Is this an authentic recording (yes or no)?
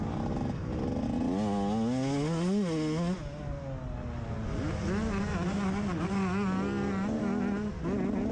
yes